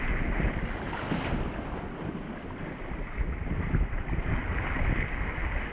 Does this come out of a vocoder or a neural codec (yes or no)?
no